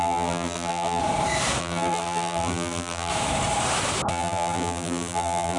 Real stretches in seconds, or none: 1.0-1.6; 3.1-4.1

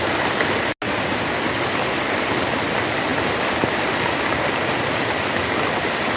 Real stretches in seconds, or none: 0.0-6.2

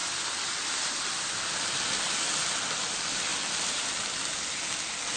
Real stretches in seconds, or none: 0.0-3.3; 4.3-5.2

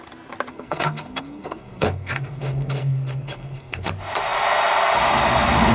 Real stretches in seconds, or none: 0.0-0.5; 3.9-5.7